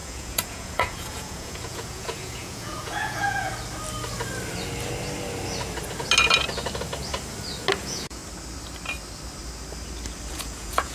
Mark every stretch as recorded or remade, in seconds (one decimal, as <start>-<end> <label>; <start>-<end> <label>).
0.0-3.5 remade; 3.5-7.8 recorded; 7.8-8.2 remade; 8.2-10.3 recorded; 10.3-10.9 remade